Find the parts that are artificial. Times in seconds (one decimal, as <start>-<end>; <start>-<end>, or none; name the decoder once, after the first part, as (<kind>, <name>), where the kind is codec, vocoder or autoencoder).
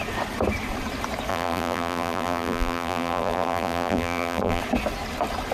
1.3-4.6 (vocoder, BigVGAN v2)